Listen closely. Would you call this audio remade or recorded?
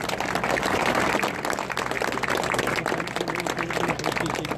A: recorded